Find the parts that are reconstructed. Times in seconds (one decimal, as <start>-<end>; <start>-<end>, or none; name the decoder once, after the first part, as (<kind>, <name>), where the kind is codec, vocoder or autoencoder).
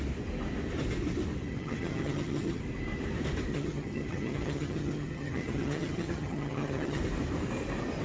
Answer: 1.5-2.6 (vocoder, HiFi-GAN); 3.5-7.0